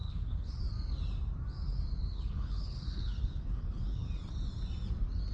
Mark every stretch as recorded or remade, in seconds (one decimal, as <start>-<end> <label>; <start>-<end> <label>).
0.0-0.6 remade; 0.6-2.0 recorded; 2.0-4.1 remade; 4.1-5.3 recorded